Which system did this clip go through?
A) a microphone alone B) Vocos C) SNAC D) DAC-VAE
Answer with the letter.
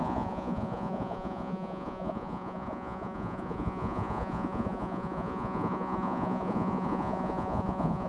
B